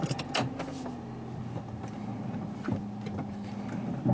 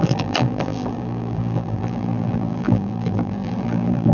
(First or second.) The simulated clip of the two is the second